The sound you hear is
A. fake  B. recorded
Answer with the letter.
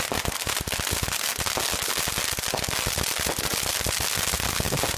B